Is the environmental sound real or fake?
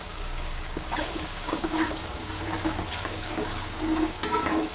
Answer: fake